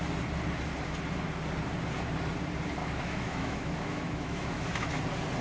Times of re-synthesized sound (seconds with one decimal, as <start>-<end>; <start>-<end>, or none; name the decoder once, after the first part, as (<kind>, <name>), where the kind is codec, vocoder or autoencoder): 2.8-5.0 (autoencoder, DAC-VAE)